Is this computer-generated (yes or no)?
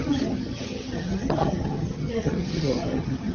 yes